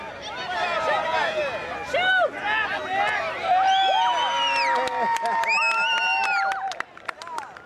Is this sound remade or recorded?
recorded